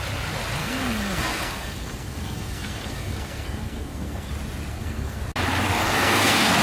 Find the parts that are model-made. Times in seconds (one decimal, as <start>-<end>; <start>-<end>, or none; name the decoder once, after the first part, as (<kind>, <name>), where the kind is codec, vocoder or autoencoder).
0.6-4.3 (codec, SNAC); 4.7-5.2; 5.7-6.6